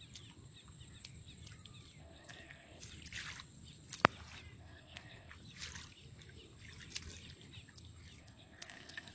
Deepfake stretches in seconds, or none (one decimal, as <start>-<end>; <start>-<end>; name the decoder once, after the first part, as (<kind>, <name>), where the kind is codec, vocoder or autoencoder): 2.0-2.8 (codec, SNAC); 4.6-5.3; 8.2-9.1